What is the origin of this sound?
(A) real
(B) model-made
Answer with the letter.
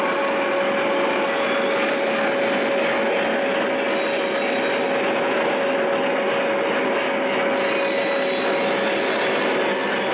A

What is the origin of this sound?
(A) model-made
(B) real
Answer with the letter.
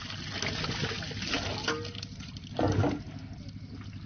B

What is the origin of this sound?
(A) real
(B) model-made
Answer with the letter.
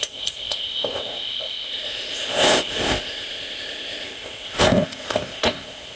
B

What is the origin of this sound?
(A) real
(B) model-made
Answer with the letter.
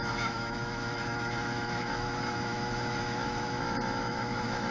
B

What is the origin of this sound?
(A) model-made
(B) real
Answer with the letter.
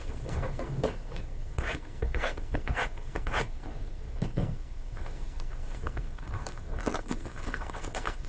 A